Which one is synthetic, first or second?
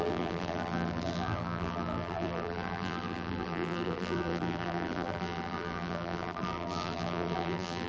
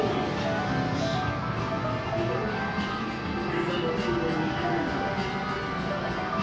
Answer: first